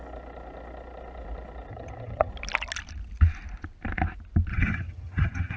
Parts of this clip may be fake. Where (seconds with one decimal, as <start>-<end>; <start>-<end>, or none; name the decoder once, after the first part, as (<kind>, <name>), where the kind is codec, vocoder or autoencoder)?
1.7-2.3 (vocoder, HiFi-GAN); 4.5-5.6